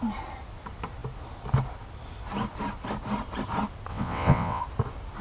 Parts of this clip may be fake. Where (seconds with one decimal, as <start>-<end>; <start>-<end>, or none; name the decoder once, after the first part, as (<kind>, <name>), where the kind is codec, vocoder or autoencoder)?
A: 3.9-4.6 (vocoder, WaveNeXt)